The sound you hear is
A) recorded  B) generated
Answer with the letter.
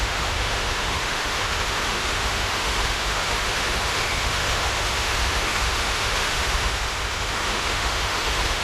B